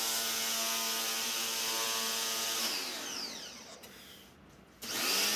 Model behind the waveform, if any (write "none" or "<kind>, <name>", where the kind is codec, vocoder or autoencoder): none